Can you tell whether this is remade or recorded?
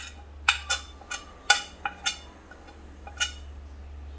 recorded